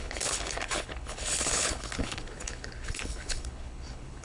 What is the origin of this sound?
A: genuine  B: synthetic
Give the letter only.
B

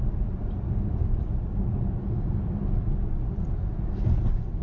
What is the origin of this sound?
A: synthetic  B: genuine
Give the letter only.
A